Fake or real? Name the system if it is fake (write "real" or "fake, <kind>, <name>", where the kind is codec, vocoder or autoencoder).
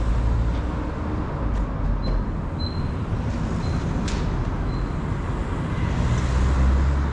real